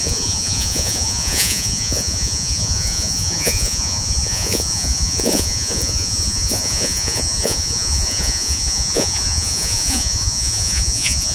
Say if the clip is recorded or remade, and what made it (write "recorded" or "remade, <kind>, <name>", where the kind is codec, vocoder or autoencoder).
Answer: remade, vocoder, Vocos